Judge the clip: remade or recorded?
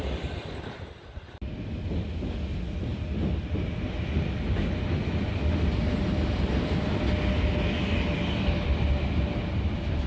recorded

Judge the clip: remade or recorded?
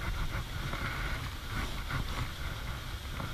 recorded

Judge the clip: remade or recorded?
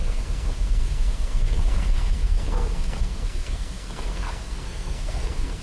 remade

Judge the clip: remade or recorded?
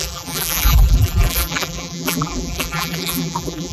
remade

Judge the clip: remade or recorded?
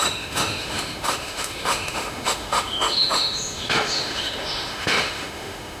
remade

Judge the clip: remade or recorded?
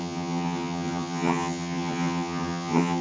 remade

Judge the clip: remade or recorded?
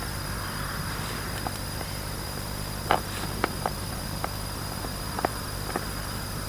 remade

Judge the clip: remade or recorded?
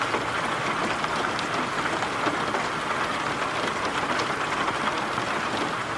recorded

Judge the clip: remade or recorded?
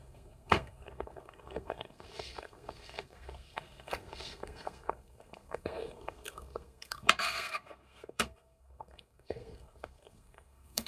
remade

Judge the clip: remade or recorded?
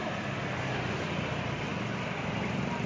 remade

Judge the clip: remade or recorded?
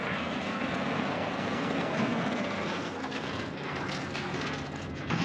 remade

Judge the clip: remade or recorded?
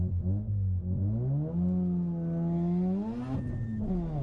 recorded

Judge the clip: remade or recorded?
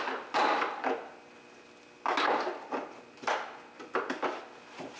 recorded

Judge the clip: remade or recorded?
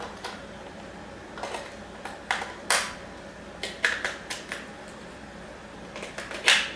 recorded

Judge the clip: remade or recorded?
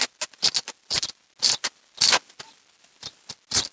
recorded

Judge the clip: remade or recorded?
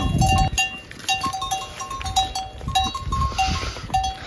recorded